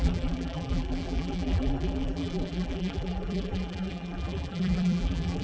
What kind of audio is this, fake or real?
fake